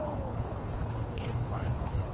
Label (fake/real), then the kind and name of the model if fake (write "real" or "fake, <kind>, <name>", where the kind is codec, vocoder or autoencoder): fake, codec, HILCodec